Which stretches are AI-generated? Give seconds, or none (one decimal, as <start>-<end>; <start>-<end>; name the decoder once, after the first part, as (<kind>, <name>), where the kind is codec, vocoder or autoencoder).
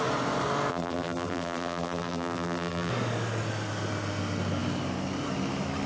0.7-2.9 (vocoder, BigVGAN v2)